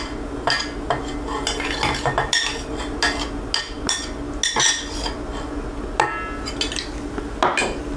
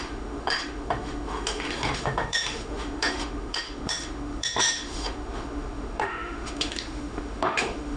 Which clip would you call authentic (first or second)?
first